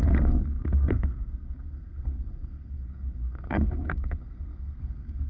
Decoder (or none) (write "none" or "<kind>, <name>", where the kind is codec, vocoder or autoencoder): codec, SNAC